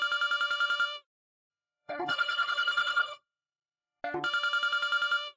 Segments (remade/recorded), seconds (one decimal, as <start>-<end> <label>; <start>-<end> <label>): 0.0-1.5 recorded; 1.5-4.0 remade; 4.0-5.4 recorded